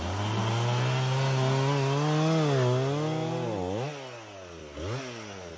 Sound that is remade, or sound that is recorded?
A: recorded